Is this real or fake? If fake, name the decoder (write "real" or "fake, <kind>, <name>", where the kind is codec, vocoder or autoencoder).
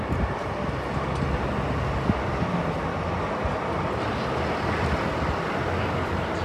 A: real